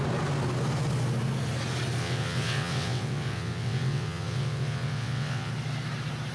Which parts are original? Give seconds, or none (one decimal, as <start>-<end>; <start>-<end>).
0.0-2.0; 5.5-6.3